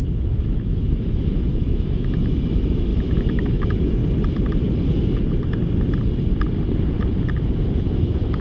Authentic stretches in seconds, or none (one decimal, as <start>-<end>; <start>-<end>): 4.0-7.9